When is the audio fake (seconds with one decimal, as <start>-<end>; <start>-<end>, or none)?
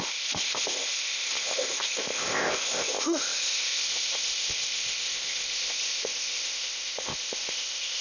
0.0-8.0